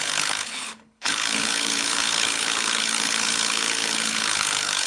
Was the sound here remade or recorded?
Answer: remade